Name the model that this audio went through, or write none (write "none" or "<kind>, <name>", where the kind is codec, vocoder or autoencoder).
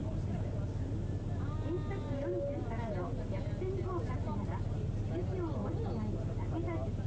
none